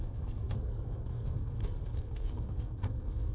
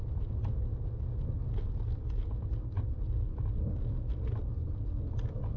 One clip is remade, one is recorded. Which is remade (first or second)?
first